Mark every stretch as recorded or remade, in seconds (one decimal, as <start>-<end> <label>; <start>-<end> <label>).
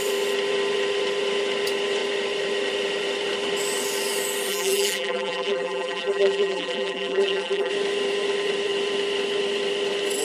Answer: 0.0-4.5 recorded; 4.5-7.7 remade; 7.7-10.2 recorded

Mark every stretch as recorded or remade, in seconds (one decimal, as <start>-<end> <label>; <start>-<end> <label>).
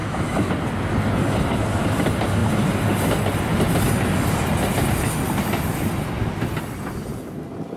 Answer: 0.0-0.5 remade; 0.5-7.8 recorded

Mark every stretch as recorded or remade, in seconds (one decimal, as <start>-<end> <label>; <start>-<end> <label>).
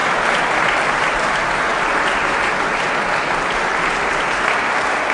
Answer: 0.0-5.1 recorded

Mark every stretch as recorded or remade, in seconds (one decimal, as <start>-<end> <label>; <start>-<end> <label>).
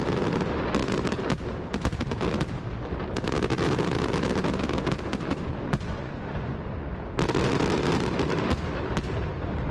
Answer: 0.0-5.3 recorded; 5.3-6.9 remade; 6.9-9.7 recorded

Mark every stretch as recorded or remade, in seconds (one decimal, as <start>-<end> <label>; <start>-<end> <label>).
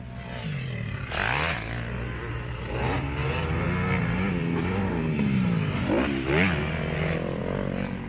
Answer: 0.0-8.1 recorded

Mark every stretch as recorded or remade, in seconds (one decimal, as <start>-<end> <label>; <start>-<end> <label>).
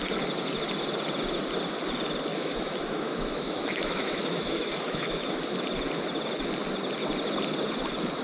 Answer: 0.0-2.3 recorded; 2.3-5.4 remade; 5.4-8.2 recorded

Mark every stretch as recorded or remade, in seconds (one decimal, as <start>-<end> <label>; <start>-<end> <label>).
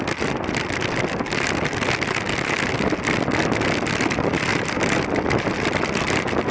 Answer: 0.0-4.5 recorded; 4.5-6.5 remade